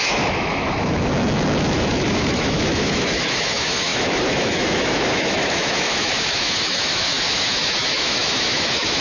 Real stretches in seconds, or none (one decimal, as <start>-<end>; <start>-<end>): none